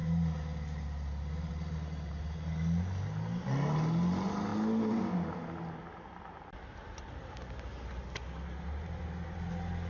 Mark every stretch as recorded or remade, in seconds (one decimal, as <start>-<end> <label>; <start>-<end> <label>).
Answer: 0.0-9.9 recorded